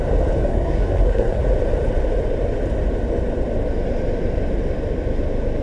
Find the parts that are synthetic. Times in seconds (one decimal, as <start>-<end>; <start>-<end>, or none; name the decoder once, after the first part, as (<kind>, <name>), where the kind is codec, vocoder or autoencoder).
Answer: 0.4-1.4 (codec, SNAC)